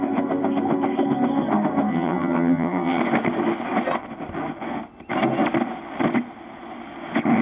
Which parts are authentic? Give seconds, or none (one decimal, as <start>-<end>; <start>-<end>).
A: 0.0-1.9; 3.0-7.4